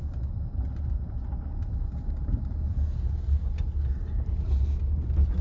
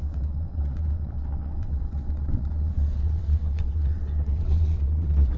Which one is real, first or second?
first